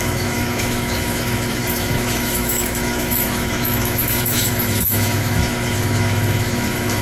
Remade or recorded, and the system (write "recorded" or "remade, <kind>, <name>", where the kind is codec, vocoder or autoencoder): remade, autoencoder, DAC-VAE